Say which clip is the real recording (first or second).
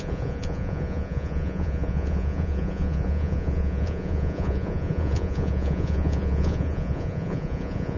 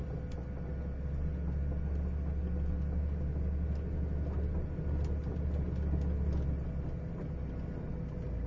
second